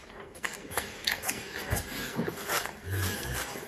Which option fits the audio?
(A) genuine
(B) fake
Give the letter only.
B